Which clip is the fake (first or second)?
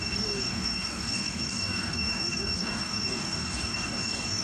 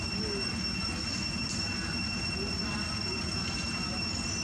first